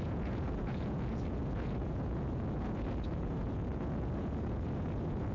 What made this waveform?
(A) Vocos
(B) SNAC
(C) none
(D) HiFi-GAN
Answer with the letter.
A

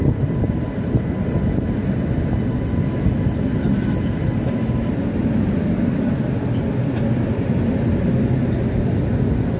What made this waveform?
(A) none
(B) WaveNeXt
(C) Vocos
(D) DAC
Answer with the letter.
A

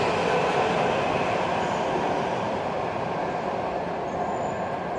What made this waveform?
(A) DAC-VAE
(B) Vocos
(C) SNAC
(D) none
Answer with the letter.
D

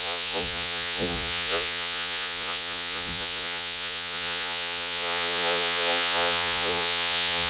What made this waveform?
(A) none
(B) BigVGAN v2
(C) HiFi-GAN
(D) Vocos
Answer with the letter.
D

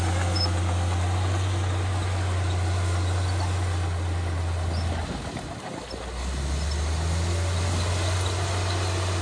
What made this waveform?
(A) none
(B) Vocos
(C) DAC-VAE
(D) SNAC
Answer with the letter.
A